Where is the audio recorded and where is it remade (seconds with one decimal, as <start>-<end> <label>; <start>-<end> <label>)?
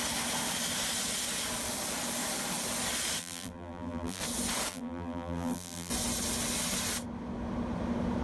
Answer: 0.0-3.2 recorded; 3.2-4.2 remade; 4.2-4.7 recorded; 4.7-5.9 remade; 5.9-8.2 recorded